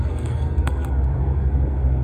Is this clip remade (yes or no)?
yes